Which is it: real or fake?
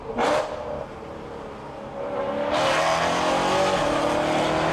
real